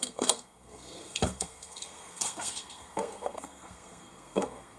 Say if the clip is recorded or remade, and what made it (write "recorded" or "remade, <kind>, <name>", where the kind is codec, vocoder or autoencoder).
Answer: remade, codec, SNAC